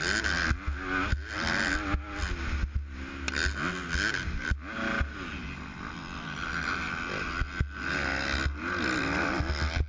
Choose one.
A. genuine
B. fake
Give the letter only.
A